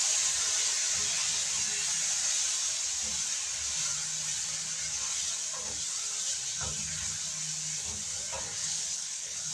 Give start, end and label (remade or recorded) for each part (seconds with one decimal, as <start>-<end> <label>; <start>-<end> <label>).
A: 0.0-8.6 recorded; 8.6-9.5 remade